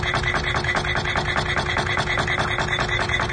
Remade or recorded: recorded